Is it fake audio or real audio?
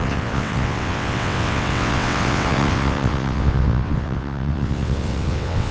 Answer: fake